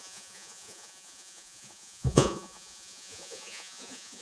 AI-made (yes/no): yes